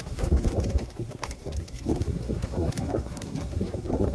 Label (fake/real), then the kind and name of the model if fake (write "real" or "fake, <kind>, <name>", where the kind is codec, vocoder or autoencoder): fake, codec, SNAC